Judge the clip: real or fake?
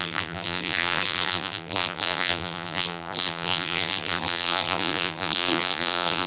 fake